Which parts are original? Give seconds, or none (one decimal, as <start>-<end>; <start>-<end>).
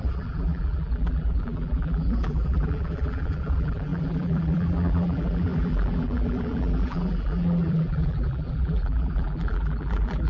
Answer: none